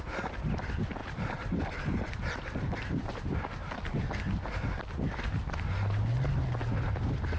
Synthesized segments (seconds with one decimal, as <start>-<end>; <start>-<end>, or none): 1.0-3.7